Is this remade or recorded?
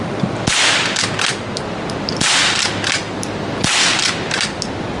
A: recorded